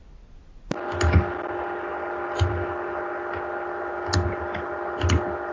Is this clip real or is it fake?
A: real